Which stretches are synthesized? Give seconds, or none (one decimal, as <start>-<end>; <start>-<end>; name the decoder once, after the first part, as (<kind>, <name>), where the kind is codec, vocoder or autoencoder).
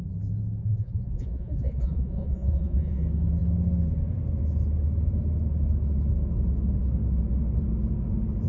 0.6-3.0 (vocoder, Vocos)